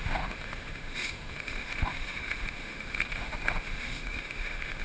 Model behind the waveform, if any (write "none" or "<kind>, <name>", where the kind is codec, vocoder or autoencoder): autoencoder, DAC-VAE